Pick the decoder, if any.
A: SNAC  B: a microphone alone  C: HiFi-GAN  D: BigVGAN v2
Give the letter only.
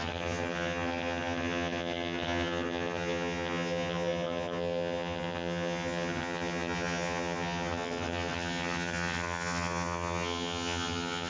C